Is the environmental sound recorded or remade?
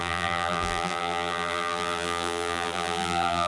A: remade